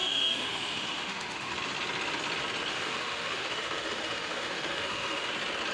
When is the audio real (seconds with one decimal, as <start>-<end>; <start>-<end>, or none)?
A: 1.5-2.7; 5.3-5.7